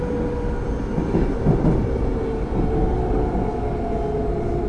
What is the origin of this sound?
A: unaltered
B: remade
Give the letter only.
A